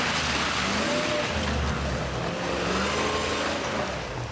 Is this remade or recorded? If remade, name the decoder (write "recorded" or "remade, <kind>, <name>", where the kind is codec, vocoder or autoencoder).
recorded